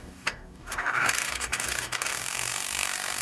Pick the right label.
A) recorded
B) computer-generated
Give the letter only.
B